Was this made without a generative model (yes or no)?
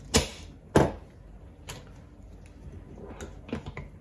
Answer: yes